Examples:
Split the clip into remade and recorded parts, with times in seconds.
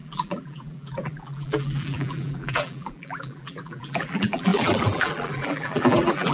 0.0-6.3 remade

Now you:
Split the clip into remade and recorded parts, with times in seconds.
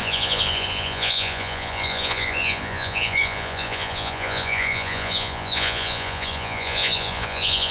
0.0-7.7 remade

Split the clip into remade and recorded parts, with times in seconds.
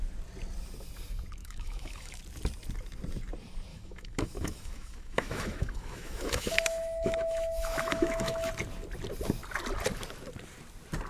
0.0-1.4 recorded; 1.4-2.2 remade; 2.2-3.7 recorded; 3.7-8.5 remade; 8.5-11.1 recorded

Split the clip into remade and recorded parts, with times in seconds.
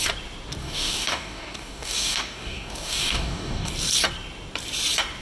0.0-0.6 recorded; 0.6-3.7 remade; 3.7-5.2 recorded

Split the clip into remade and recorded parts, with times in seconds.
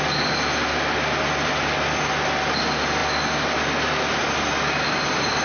0.0-5.4 recorded